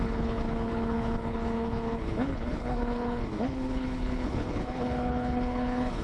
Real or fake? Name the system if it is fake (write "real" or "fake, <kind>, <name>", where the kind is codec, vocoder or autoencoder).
fake, codec, HILCodec